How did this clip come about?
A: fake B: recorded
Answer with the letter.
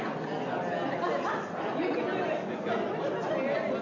B